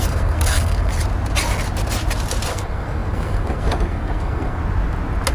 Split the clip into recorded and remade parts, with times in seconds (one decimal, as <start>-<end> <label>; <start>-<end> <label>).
0.0-0.9 remade; 0.9-2.5 recorded; 2.5-4.6 remade; 4.6-5.3 recorded

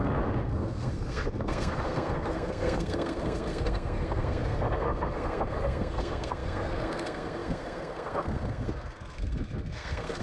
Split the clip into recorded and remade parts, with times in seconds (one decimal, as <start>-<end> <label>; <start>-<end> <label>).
0.0-10.2 remade

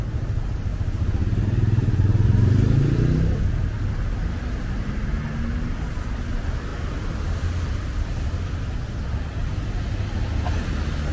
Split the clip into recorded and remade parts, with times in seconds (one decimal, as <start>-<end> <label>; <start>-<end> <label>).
0.0-11.1 recorded

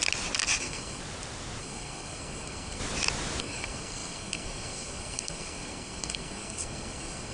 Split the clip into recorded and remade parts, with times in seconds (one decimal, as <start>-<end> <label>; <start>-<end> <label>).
0.0-0.6 recorded; 0.6-1.0 remade; 1.0-1.6 recorded; 1.6-2.8 remade; 2.8-3.4 recorded; 3.4-7.3 remade